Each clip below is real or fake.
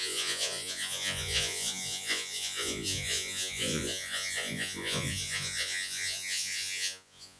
fake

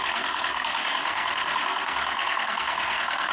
fake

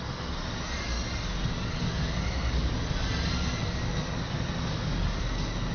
real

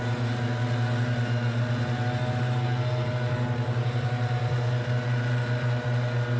real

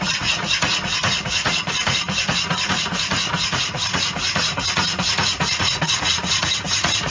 fake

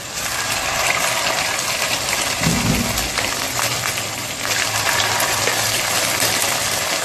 real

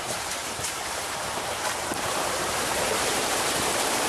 fake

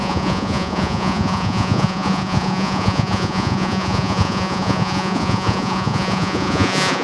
fake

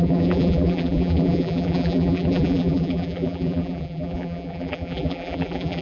fake